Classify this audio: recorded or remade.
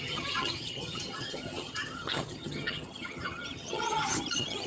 remade